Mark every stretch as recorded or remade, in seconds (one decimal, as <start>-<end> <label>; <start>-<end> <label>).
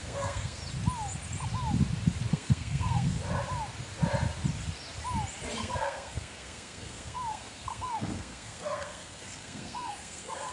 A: 0.0-0.6 remade; 0.6-2.3 recorded; 2.3-3.2 remade; 3.2-5.6 recorded; 5.6-10.5 remade